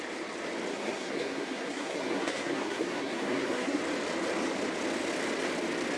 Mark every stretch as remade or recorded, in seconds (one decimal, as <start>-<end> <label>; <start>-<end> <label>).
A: 0.0-0.7 recorded; 0.7-3.8 remade; 3.8-6.0 recorded